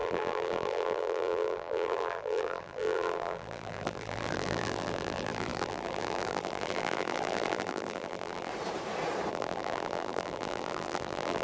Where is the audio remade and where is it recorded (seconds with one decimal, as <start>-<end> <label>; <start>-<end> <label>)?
0.0-8.5 remade; 8.5-9.3 recorded; 9.3-11.4 remade